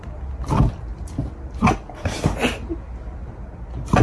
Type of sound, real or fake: real